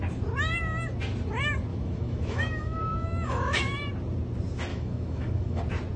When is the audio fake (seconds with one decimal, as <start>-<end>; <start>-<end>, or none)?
1.7-3.9; 4.7-5.6